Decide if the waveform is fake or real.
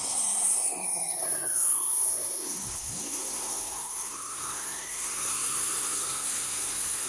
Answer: fake